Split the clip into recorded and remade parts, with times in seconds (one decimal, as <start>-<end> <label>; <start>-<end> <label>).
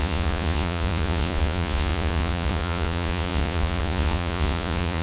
0.0-5.0 remade